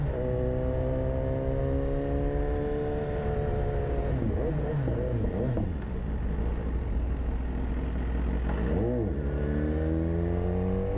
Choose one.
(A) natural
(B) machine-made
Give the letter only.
A